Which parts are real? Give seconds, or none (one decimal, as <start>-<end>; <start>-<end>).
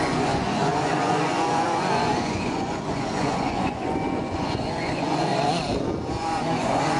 5.3-6.1